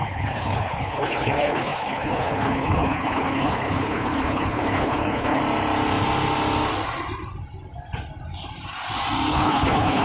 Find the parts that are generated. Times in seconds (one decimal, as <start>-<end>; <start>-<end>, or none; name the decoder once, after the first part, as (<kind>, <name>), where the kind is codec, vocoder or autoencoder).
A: 0.0-5.4 (codec, HILCodec); 9.3-10.0